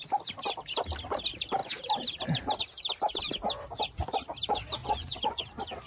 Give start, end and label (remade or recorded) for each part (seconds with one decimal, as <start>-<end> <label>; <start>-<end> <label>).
0.0-4.8 recorded; 4.8-5.4 remade; 5.4-5.9 recorded